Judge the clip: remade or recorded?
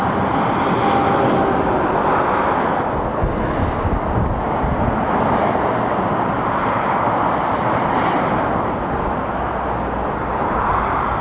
recorded